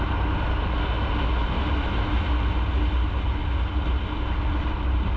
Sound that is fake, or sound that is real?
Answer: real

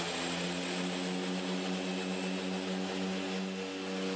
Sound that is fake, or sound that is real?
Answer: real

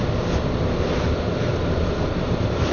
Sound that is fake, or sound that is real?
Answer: real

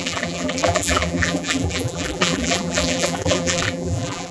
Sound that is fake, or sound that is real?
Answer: fake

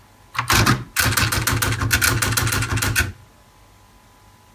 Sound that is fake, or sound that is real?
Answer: real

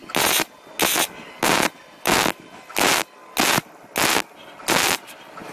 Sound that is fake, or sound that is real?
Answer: real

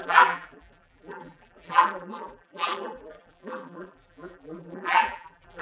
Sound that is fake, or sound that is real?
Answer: fake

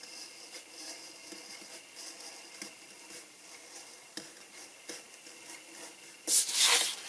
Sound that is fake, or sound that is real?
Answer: real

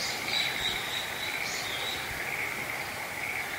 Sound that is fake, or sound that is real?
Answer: fake